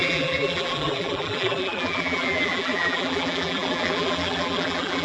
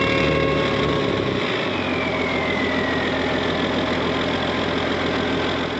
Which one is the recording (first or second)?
second